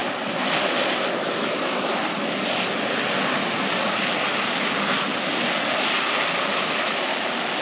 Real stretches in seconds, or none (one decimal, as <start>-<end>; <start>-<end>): 0.0-1.2; 1.9-6.5; 7.1-7.6